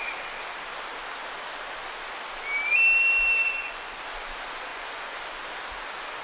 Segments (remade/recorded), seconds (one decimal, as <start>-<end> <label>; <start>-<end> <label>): 0.0-3.4 recorded; 3.4-4.0 remade; 4.0-4.7 recorded; 4.7-5.2 remade; 5.2-6.2 recorded